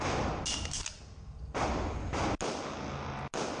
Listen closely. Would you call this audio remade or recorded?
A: recorded